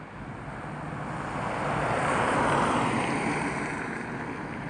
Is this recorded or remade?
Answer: recorded